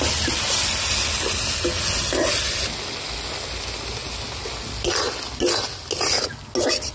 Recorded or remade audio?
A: recorded